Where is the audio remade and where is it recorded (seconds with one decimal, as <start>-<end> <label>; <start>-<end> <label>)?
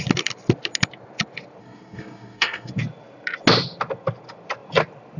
0.0-1.6 recorded; 1.6-2.7 remade; 2.7-5.2 recorded